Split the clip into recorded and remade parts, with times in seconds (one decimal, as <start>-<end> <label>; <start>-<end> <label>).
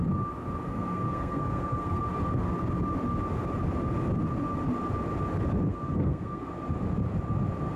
0.0-0.7 recorded; 0.7-2.0 remade; 2.0-5.7 recorded; 5.7-6.5 remade; 6.5-7.8 recorded